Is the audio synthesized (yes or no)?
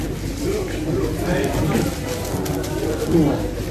no